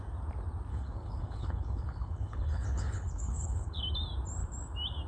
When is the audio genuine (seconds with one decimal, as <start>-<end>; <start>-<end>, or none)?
0.0-0.7; 3.8-5.1